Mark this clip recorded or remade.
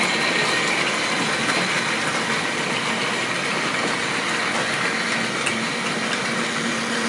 recorded